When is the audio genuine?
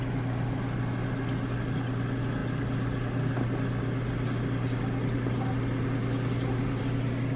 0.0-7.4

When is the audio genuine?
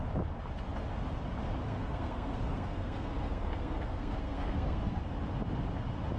0.0-1.7; 5.0-6.2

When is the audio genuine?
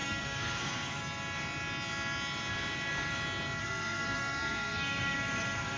1.0-3.6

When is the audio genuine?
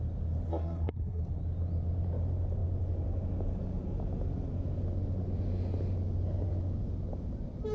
0.0-0.5; 1.2-7.7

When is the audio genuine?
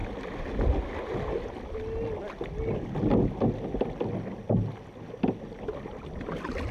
0.0-6.7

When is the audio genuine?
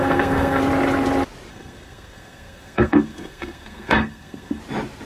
0.6-1.5; 4.6-5.1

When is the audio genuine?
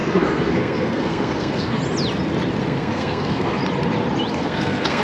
1.8-2.6; 3.6-4.3